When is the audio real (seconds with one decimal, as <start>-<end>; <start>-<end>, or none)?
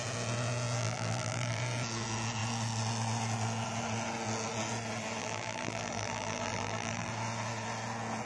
0.0-0.8; 1.6-5.2; 7.1-8.3